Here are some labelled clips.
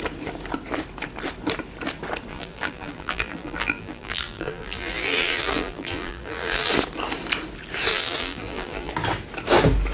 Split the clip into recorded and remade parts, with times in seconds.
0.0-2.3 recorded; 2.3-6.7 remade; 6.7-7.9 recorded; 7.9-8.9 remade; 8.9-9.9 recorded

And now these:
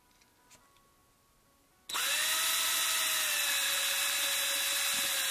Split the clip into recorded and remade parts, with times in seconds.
0.0-5.3 recorded

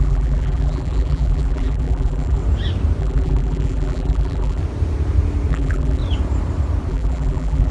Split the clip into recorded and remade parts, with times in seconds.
0.0-2.4 remade; 2.4-3.0 recorded; 3.0-4.6 remade; 4.6-5.5 recorded; 5.5-6.0 remade; 6.0-6.9 recorded; 6.9-7.7 remade

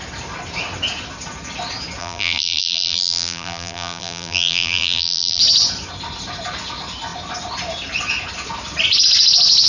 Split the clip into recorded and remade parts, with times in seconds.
0.0-2.0 recorded; 2.0-5.4 remade; 5.4-9.7 recorded

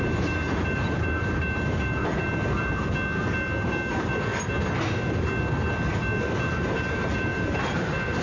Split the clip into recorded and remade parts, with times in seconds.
0.0-2.1 remade; 2.1-3.9 recorded; 3.9-4.3 remade; 4.3-6.6 recorded; 6.6-8.2 remade

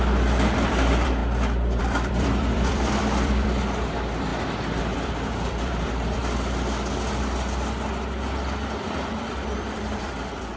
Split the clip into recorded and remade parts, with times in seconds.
0.0-1.2 remade; 1.2-1.8 recorded; 1.8-4.3 remade; 4.3-4.8 recorded; 4.8-6.2 remade; 6.2-9.1 recorded; 9.1-10.6 remade

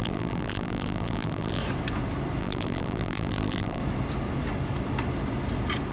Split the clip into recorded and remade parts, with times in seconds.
0.0-1.6 remade; 1.6-2.4 recorded; 2.4-3.8 remade; 3.8-5.9 recorded

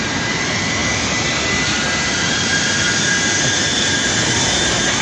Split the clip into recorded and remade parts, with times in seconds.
0.0-5.0 recorded